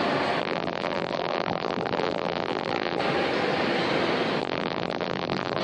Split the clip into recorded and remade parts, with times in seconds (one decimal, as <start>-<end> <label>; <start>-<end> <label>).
0.0-0.4 recorded; 0.4-3.0 remade; 3.0-4.4 recorded; 4.4-5.6 remade